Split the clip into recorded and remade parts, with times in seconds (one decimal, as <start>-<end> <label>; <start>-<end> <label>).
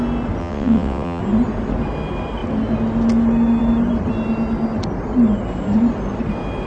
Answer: 0.0-0.4 recorded; 0.4-1.2 remade; 1.2-6.7 recorded